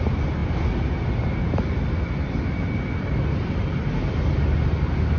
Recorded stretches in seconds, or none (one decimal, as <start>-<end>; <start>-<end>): 0.0-5.2